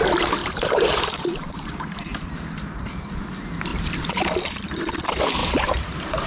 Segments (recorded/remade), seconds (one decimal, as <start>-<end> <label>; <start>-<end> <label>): 0.0-0.4 recorded; 0.4-1.8 remade; 1.8-3.7 recorded; 3.7-4.5 remade; 4.5-5.4 recorded; 5.4-6.3 remade